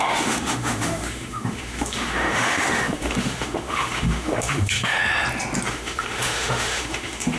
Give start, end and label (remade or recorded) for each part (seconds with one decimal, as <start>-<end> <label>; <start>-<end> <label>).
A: 0.0-5.0 remade; 5.0-5.7 recorded; 5.7-7.4 remade